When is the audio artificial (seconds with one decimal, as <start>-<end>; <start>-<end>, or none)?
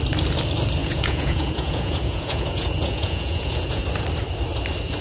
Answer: 0.8-3.8